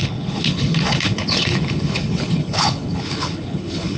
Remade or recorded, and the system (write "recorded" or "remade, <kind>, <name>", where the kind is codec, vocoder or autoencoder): remade, codec, HILCodec